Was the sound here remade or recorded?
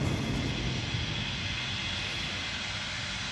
recorded